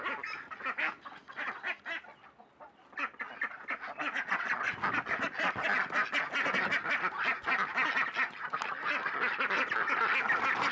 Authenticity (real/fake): real